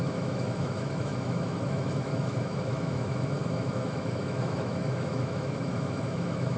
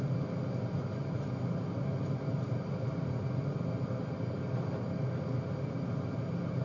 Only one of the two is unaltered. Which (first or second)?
second